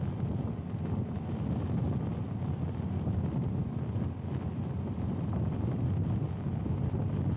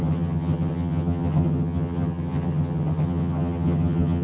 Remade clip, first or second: second